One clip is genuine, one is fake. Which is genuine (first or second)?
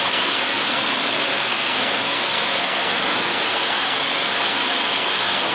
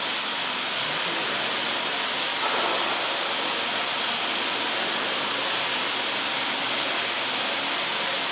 second